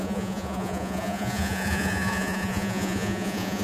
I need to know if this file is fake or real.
fake